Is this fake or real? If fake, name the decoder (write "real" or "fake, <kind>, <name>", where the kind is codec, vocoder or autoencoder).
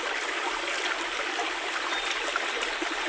real